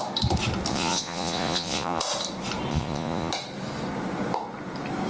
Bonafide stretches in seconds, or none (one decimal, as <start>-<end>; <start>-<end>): 0.0-0.7; 2.0-2.7; 3.3-5.1